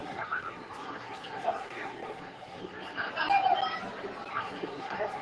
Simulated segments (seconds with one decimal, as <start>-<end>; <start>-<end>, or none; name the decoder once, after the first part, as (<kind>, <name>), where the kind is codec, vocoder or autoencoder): 0.0-3.1 (codec, SNAC); 4.3-5.2